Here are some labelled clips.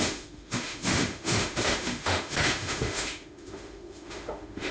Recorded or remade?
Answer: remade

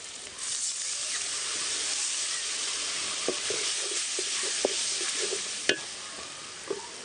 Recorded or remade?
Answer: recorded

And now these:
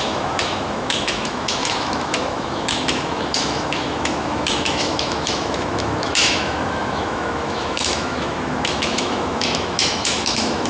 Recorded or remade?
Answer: remade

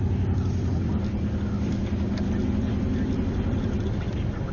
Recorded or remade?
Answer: recorded